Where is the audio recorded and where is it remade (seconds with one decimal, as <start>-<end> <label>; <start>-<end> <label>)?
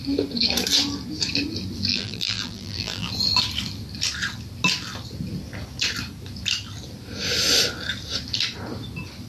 0.0-1.9 recorded; 1.9-3.1 remade; 3.1-9.3 recorded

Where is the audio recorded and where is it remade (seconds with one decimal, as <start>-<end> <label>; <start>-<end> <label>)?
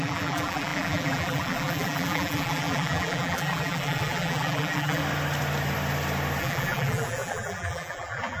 0.0-5.0 remade; 5.0-6.4 recorded; 6.4-8.4 remade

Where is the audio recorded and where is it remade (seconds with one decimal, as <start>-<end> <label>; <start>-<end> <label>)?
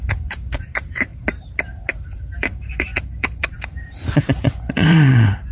0.0-1.1 remade; 1.1-1.9 recorded; 1.9-5.5 remade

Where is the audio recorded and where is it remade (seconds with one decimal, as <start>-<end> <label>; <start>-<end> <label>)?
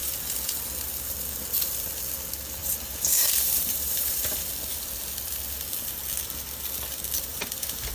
0.0-2.6 recorded; 2.6-4.5 remade; 4.5-7.3 recorded; 7.3-7.9 remade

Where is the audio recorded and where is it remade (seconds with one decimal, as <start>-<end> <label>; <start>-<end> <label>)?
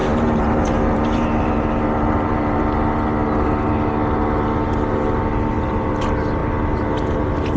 0.0-2.6 remade; 2.6-7.6 recorded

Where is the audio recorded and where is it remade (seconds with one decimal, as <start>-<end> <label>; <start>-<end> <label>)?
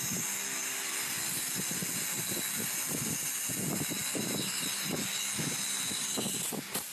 0.0-6.9 recorded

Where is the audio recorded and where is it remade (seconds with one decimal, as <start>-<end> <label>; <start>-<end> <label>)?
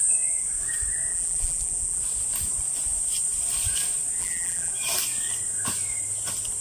0.0-1.1 recorded; 1.1-2.0 remade; 2.0-4.2 recorded; 4.2-4.7 remade; 4.7-6.6 recorded